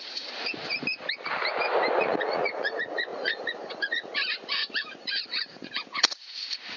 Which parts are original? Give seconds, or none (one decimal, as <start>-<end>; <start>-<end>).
0.5-2.0